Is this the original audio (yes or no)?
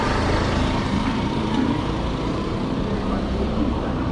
no